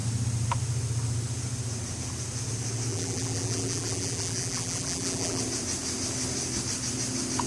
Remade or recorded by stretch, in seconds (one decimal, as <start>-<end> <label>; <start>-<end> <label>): 0.0-2.9 recorded; 2.9-5.4 remade; 5.4-7.5 recorded